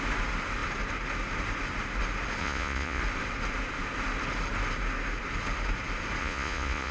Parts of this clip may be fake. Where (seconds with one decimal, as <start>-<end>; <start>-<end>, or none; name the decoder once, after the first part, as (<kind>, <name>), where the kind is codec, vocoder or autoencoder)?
2.4-3.0 (vocoder, Vocos); 6.2-6.9